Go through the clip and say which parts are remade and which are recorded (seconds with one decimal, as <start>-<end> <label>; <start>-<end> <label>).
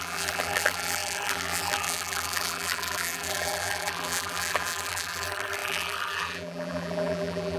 0.0-7.6 remade